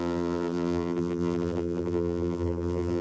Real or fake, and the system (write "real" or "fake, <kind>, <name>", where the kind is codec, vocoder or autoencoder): fake, vocoder, BigVGAN v2